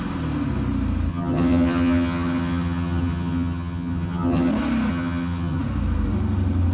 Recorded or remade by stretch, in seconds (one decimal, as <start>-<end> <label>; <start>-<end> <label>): 0.0-1.1 recorded; 1.1-4.5 remade; 4.5-4.9 recorded; 4.9-5.6 remade; 5.6-6.7 recorded

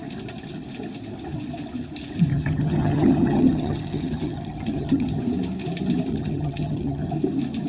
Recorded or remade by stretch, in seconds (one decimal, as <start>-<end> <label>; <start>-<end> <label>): 0.0-2.3 recorded; 2.3-5.2 remade; 5.2-6.1 recorded; 6.1-7.1 remade; 7.1-7.7 recorded

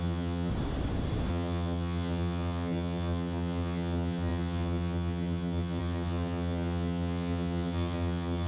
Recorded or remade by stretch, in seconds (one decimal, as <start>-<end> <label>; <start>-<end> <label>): 0.0-0.5 remade; 0.5-1.3 recorded; 1.3-8.5 remade

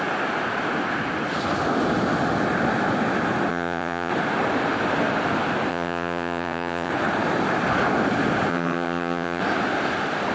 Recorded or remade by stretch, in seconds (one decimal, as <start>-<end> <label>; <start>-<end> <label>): 0.0-3.5 recorded; 3.5-4.1 remade; 4.1-5.7 recorded; 5.7-6.9 remade; 6.9-8.5 recorded; 8.5-9.4 remade; 9.4-10.3 recorded